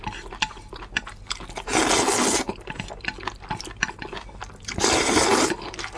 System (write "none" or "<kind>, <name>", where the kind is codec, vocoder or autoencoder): none